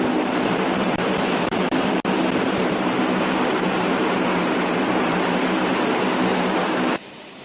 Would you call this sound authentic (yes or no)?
no